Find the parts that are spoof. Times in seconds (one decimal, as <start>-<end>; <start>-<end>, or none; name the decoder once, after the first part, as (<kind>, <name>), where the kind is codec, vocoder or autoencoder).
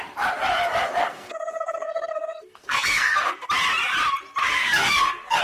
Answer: 1.0-3.5 (codec, SNAC); 4.4-5.4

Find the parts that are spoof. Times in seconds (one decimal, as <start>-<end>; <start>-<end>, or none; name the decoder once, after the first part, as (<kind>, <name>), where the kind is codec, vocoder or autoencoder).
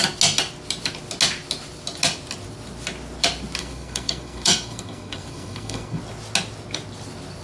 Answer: 3.6-6.0 (codec, SNAC)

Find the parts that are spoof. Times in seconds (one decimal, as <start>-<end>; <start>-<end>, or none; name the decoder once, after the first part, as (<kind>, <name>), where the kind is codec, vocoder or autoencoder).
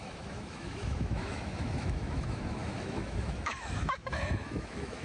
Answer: 0.0-5.0 (autoencoder, DAC-VAE)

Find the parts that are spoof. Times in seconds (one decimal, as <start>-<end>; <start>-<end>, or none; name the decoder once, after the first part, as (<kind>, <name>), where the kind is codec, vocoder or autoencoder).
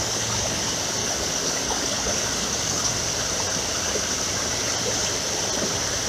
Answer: 0.0-0.6 (codec, DAC); 1.0-2.9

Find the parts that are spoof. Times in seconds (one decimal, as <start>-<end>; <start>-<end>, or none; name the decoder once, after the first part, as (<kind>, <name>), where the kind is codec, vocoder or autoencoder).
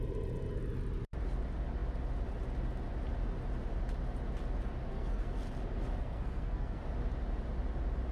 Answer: 4.9-5.4 (codec, SNAC); 6.0-6.8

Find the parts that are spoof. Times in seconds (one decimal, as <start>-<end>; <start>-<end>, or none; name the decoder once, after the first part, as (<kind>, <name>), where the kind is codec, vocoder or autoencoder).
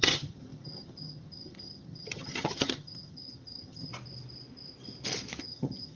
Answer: 0.0-3.9 (vocoder, HiFi-GAN); 5.4-6.0